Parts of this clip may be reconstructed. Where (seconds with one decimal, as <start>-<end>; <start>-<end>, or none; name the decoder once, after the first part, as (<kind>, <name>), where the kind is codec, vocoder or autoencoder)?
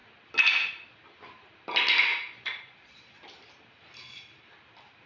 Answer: 2.1-3.2 (vocoder, Vocos)